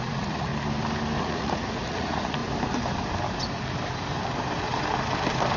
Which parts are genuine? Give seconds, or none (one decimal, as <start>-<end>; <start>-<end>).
0.5-1.2; 2.4-5.6